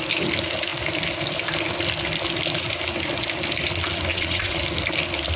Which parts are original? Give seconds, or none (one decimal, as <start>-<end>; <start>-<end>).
0.0-4.1; 4.6-5.4

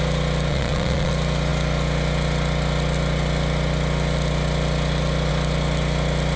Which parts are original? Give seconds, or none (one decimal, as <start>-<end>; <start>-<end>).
0.0-0.5; 1.1-6.4